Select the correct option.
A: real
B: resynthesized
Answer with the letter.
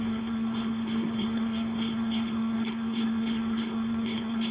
B